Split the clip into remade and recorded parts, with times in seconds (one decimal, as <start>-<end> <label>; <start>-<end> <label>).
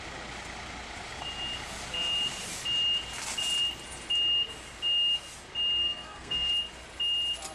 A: 0.0-5.8 recorded; 5.8-6.5 remade; 6.5-7.5 recorded